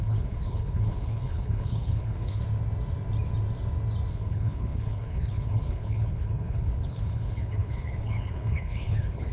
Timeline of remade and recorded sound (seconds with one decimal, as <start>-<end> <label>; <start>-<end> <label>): 0.0-2.4 remade; 2.4-4.1 recorded; 4.1-9.3 remade